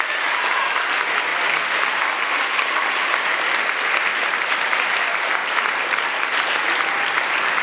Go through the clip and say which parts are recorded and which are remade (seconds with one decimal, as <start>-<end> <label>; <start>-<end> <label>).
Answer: 0.0-7.6 recorded